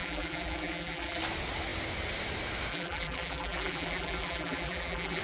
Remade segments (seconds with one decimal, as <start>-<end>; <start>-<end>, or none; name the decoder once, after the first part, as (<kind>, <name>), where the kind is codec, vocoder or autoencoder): 0.0-1.2 (vocoder, BigVGAN v2); 2.7-5.2